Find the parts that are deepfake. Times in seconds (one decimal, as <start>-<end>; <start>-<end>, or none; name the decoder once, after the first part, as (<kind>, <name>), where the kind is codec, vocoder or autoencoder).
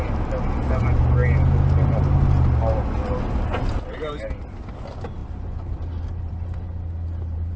none